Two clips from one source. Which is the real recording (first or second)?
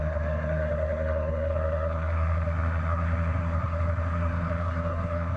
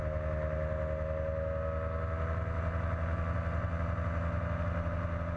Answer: second